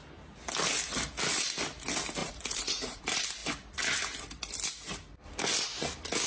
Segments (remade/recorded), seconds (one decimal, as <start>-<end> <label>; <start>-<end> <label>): 0.0-2.2 recorded; 2.2-3.0 remade; 3.0-6.3 recorded